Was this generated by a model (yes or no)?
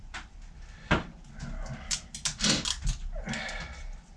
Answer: no